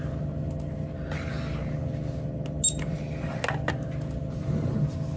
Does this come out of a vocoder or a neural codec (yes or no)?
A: no